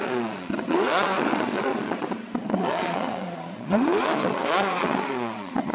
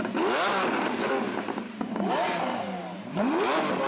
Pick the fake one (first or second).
first